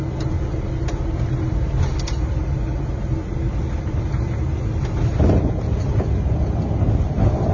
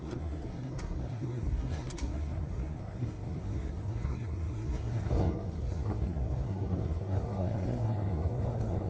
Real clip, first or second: first